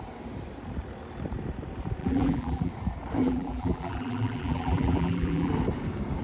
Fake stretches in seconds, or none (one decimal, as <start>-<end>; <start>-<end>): 2.0-2.7; 3.2-5.5